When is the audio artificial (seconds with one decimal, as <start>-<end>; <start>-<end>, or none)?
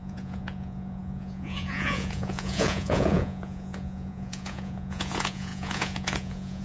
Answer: 0.0-6.6